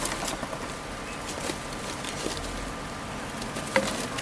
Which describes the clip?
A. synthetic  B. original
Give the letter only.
B